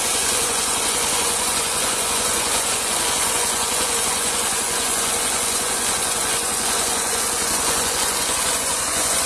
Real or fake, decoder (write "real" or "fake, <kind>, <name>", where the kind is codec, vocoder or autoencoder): fake, vocoder, Vocos